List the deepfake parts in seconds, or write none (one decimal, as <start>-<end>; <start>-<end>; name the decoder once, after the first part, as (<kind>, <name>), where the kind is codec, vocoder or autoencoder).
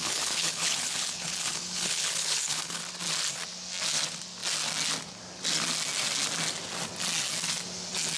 0.0-2.8 (codec, HILCodec)